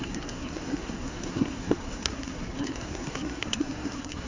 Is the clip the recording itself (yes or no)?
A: no